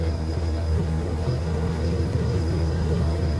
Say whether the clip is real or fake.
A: fake